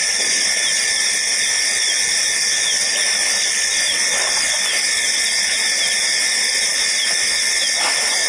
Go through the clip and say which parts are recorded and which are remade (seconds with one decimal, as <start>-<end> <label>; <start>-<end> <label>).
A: 0.0-8.3 recorded